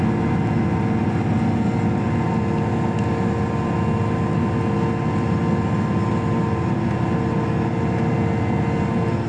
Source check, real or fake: real